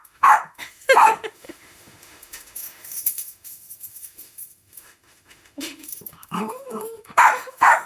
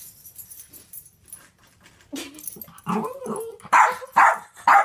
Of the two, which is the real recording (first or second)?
second